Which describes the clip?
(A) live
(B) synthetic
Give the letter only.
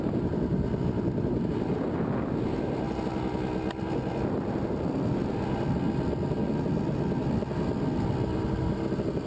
A